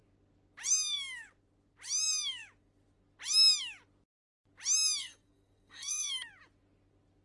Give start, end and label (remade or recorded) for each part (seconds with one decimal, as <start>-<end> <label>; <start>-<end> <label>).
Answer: 0.0-5.0 recorded; 5.0-6.1 remade; 6.1-7.2 recorded